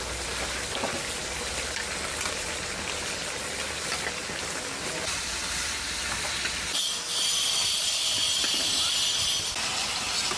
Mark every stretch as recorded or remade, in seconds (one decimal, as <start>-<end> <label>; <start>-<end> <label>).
0.0-10.4 recorded